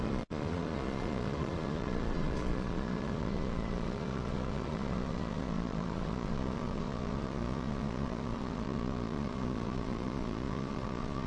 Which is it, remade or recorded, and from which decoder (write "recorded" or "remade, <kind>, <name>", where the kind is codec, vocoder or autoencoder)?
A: remade, vocoder, Vocos